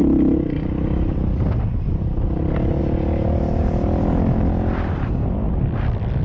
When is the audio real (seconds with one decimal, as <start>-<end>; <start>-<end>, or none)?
0.0-6.2